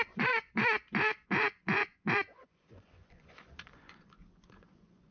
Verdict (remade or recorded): remade